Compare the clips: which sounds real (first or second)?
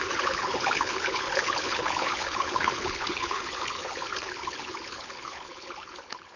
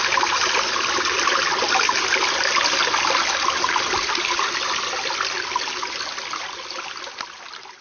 second